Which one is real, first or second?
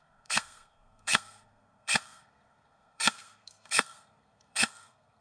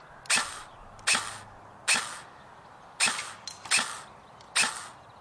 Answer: second